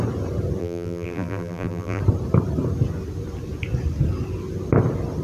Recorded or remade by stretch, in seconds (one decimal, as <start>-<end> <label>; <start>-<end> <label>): 0.0-0.6 recorded; 0.6-2.0 remade; 2.0-5.2 recorded